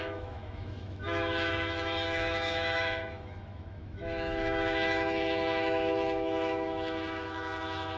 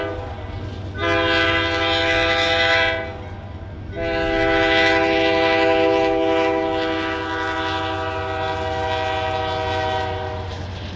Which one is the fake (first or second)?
first